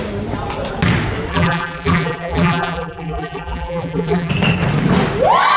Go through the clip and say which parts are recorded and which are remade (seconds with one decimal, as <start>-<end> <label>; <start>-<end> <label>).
0.0-1.3 recorded; 1.3-4.3 remade; 4.3-5.6 recorded